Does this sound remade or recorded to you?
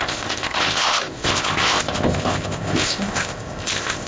remade